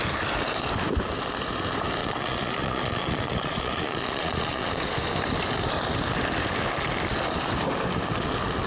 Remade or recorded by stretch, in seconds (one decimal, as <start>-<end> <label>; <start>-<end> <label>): 0.0-2.0 recorded; 2.0-4.7 remade; 4.7-8.7 recorded